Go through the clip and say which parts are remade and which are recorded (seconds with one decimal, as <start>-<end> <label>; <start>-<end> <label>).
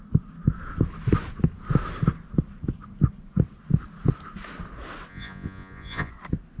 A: 0.0-5.1 recorded; 5.1-6.1 remade; 6.1-6.6 recorded